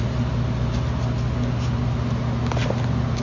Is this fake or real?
real